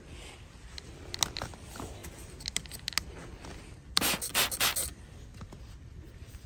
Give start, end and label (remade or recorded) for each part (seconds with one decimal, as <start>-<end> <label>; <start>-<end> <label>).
0.0-6.5 recorded